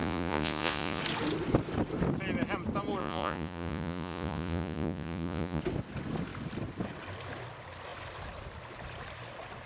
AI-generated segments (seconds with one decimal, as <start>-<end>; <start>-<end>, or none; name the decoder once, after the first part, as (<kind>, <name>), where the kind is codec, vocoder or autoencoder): 0.0-1.0 (vocoder, Vocos); 3.0-5.6